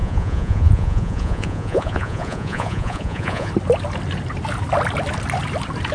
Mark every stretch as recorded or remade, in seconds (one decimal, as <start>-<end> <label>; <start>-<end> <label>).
0.0-3.5 remade; 3.5-5.9 recorded